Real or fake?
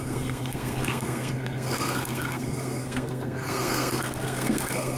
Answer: fake